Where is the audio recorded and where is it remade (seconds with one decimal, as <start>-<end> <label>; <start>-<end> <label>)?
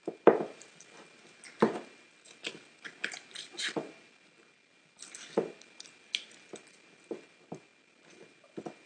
0.0-8.9 recorded